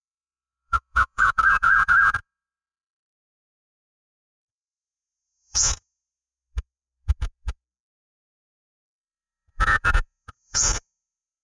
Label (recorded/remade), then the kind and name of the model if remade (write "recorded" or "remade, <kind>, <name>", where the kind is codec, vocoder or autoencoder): remade, vocoder, Vocos